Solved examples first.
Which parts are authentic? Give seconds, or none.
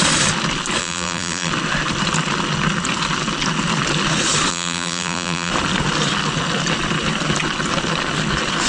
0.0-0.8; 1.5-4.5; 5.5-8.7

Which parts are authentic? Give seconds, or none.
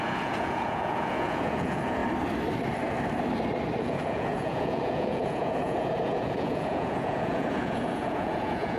2.0-3.8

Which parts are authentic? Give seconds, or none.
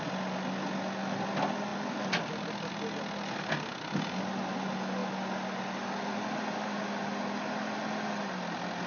0.0-1.7; 2.7-8.9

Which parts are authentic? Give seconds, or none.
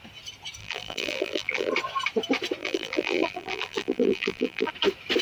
0.0-0.6; 1.7-2.6; 4.7-5.2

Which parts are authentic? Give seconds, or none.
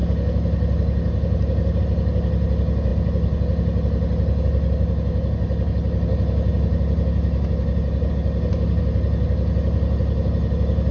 0.0-10.9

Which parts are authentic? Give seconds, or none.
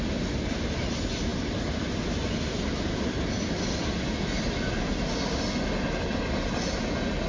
0.0-7.3